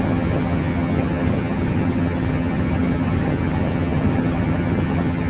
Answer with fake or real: fake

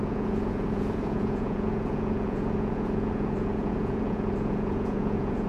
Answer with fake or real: fake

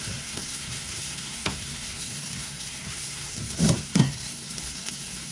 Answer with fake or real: fake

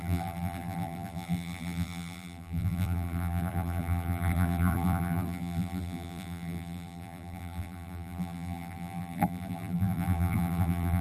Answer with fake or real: fake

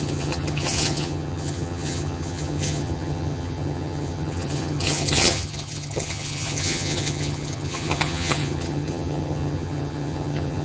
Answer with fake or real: fake